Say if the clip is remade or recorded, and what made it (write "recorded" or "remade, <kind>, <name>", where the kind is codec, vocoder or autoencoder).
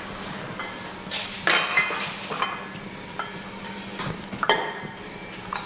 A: remade, vocoder, BigVGAN v2